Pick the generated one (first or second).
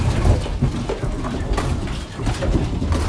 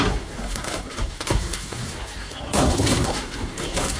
second